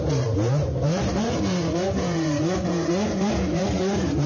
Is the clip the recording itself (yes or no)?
no